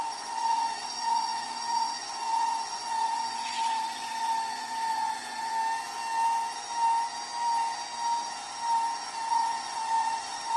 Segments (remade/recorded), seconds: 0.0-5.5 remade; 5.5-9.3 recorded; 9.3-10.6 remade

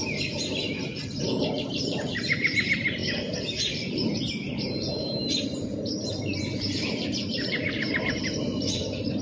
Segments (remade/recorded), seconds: 0.0-9.2 remade

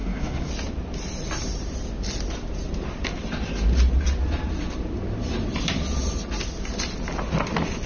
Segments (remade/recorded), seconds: 0.0-0.5 remade; 0.5-7.9 recorded

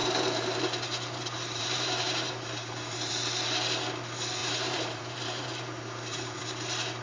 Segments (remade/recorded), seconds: 0.0-3.1 remade; 3.1-4.4 recorded; 4.4-6.4 remade; 6.4-7.0 recorded

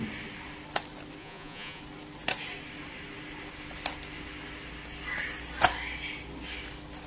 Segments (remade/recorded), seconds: 0.0-1.2 recorded; 1.2-1.8 remade; 1.8-7.1 recorded

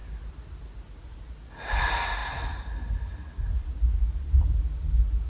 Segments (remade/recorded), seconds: 0.0-5.3 recorded

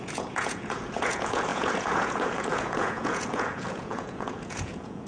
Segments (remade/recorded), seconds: 0.0-5.1 remade

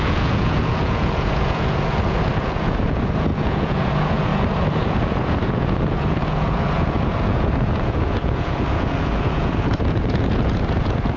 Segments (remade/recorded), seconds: 0.0-11.2 remade